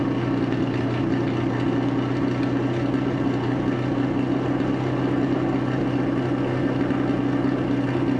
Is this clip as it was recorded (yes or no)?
yes